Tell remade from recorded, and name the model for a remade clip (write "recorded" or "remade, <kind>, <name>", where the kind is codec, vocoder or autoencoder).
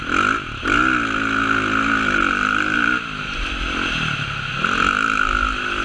recorded